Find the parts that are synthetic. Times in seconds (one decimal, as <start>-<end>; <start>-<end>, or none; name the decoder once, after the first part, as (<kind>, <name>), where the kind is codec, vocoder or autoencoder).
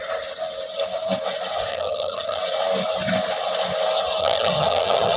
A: 1.7-2.4 (vocoder, HiFi-GAN); 4.2-5.2